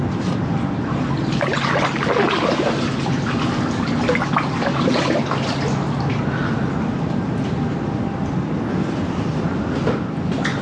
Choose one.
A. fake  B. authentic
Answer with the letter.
B